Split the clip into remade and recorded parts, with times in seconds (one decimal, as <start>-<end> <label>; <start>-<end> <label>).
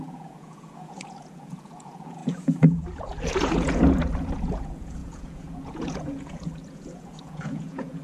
0.0-8.0 remade